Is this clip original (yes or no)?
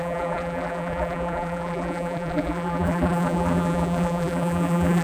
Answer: no